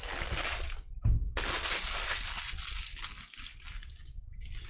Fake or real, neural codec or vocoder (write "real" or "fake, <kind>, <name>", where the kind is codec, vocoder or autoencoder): real